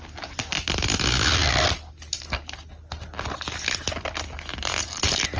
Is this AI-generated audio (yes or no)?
no